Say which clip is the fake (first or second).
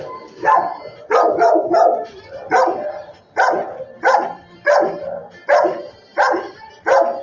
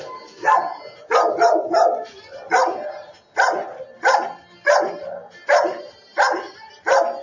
first